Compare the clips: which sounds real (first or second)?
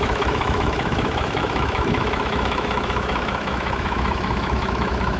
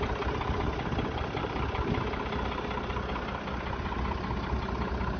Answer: second